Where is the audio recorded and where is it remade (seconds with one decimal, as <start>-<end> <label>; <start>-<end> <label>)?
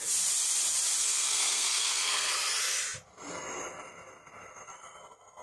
0.0-1.0 recorded; 1.0-2.3 remade; 2.3-5.4 recorded